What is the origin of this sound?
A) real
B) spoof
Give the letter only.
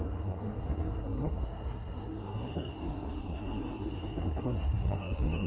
B